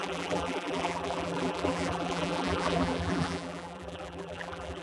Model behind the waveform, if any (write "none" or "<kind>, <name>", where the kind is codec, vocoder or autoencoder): vocoder, BigVGAN v2